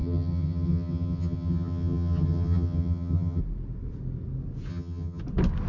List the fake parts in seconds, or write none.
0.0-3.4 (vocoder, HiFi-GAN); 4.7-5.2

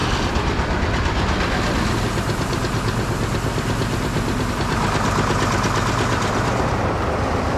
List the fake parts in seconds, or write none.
none

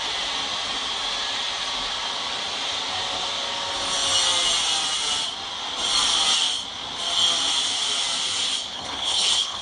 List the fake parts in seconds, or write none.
8.7-9.6 (codec, HILCodec)

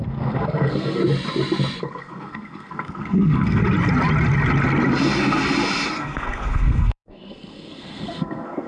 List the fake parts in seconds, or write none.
0.0-1.0 (codec, SNAC); 1.8-3.6; 5.9-8.7

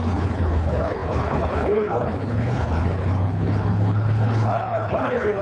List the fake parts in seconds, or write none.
0.0-5.4 (codec, HILCodec)

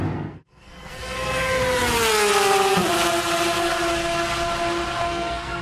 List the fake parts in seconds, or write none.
0.0-1.6 (codec, SNAC); 5.0-5.6